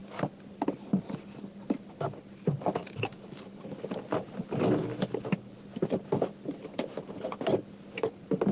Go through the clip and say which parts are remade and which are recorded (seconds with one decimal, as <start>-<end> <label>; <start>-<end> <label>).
0.0-2.8 recorded; 2.8-4.0 remade; 4.0-8.5 recorded